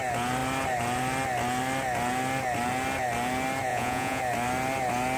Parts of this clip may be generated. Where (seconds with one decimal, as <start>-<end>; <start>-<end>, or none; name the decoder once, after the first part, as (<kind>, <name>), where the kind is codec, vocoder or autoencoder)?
3.7-4.2 (vocoder, Vocos)

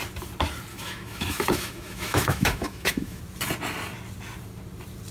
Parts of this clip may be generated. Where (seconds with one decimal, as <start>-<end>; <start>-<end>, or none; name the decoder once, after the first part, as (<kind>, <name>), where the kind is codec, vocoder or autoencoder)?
0.7-3.2 (autoencoder, DAC-VAE)